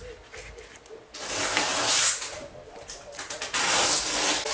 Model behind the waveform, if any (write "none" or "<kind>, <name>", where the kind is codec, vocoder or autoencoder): none